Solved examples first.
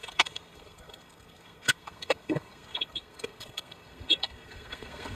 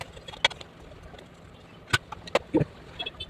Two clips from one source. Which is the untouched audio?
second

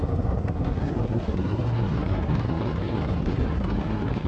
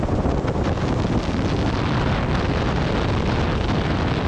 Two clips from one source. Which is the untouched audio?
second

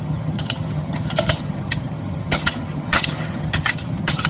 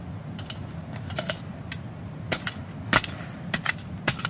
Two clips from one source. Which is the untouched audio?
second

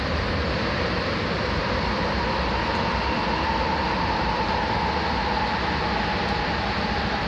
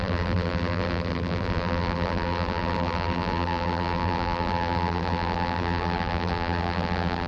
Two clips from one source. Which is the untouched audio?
first